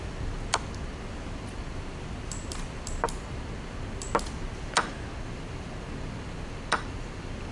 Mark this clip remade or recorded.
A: recorded